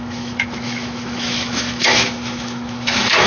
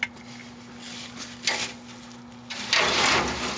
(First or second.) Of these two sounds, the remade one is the first